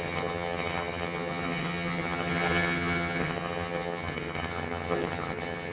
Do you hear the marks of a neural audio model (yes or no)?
yes